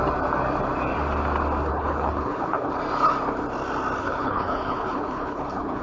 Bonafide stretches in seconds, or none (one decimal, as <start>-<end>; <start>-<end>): 0.0-1.7; 2.7-4.0